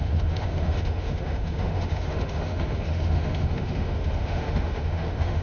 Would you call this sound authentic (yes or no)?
no